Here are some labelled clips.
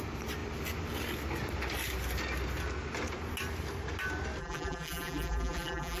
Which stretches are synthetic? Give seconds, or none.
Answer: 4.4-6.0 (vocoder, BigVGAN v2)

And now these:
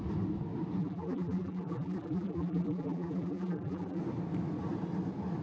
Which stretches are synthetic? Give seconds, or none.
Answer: 0.8-4.0 (vocoder, BigVGAN v2)

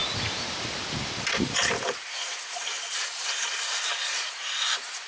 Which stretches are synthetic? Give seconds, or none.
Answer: 0.0-2.4 (vocoder, BigVGAN v2)

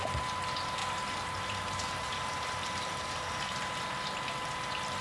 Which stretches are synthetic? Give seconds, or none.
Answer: 0.8-3.8 (vocoder, BigVGAN v2)

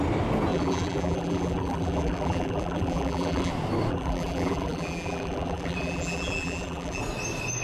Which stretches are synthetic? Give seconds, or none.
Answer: 0.5-3.5 (vocoder, BigVGAN v2); 3.9-7.0